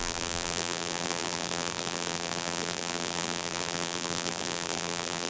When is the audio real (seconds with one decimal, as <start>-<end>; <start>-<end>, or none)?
none

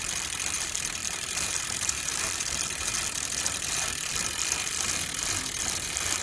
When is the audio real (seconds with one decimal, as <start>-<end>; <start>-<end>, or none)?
0.0-1.0; 4.2-6.2